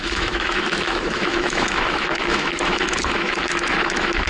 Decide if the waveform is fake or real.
fake